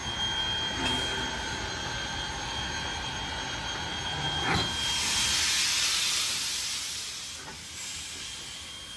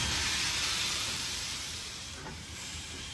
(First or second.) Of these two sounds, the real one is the first